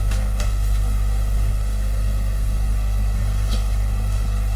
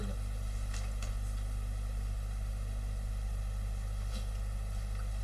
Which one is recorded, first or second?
second